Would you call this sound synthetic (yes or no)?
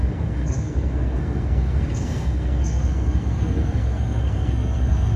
yes